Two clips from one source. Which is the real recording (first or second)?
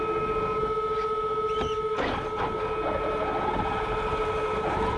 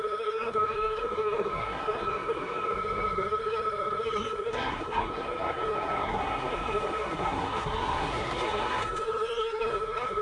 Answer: first